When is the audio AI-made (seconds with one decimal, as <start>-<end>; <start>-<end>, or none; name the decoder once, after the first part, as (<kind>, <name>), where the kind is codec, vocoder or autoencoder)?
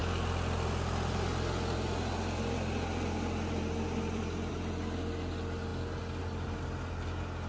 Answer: none